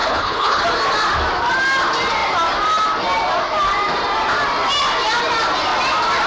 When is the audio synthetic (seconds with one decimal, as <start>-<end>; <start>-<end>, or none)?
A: 0.0-0.6